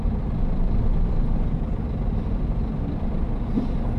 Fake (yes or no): yes